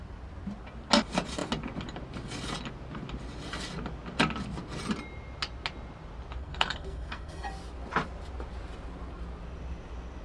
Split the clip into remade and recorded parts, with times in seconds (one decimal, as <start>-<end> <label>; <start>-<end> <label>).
0.0-6.4 recorded; 6.4-7.5 remade; 7.5-10.2 recorded